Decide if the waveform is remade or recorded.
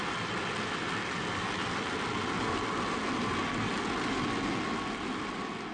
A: recorded